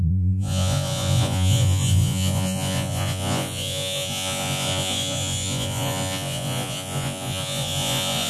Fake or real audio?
fake